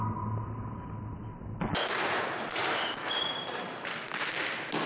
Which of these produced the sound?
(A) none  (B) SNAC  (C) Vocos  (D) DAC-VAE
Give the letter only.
A